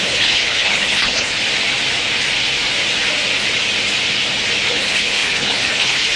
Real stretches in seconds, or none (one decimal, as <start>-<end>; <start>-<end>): 1.4-4.7